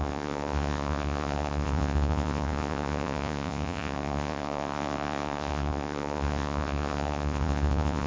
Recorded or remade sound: remade